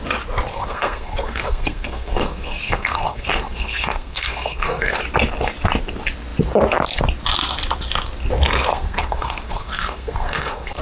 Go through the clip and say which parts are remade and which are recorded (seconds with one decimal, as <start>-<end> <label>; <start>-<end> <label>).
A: 0.0-0.5 recorded; 0.5-5.0 remade; 5.0-8.7 recorded; 8.7-10.8 remade